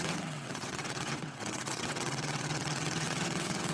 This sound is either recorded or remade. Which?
remade